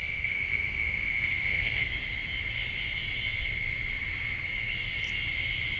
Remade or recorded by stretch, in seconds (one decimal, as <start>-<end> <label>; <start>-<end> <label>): 0.0-1.9 remade; 1.9-5.8 recorded